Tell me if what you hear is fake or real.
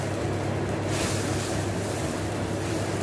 real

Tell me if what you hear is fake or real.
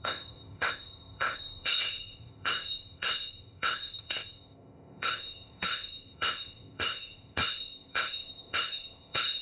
fake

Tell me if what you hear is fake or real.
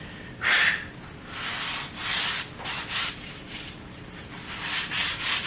real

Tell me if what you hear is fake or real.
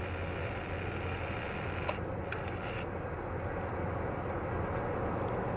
real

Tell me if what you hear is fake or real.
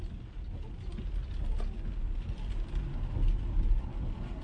real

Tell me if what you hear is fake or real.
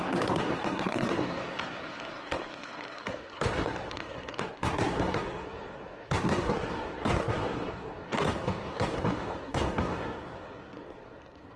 fake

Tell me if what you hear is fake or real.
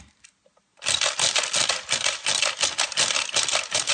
real